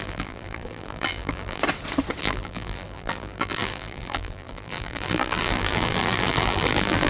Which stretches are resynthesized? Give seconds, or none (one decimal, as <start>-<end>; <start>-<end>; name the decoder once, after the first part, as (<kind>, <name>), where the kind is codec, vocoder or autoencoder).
0.0-1.6 (vocoder, BigVGAN v2); 2.2-7.1